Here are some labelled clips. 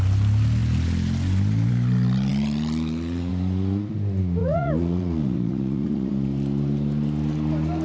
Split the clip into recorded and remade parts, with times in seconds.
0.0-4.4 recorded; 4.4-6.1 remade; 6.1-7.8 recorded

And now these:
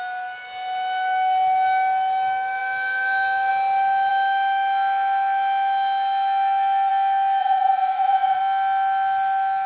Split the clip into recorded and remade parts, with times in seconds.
0.0-7.4 recorded; 7.4-8.4 remade; 8.4-9.7 recorded